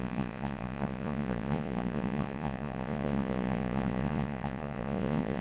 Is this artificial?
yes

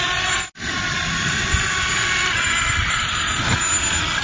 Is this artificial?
no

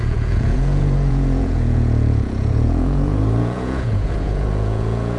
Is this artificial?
yes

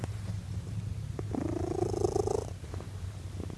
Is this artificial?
no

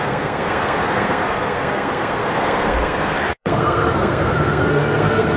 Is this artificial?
yes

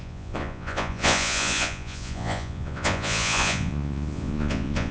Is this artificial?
yes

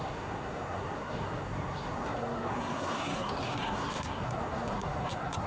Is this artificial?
yes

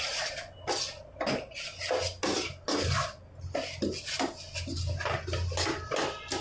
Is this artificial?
no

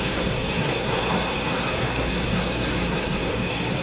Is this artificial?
yes